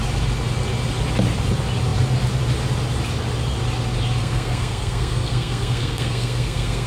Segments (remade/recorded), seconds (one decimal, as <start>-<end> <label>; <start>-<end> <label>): 0.0-4.2 recorded; 4.2-6.9 remade